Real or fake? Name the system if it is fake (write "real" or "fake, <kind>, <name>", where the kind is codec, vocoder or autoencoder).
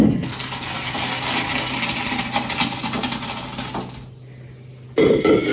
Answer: real